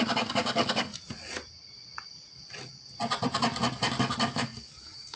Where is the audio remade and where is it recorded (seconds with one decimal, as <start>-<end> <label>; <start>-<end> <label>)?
0.0-0.9 remade; 0.9-4.0 recorded; 4.0-5.2 remade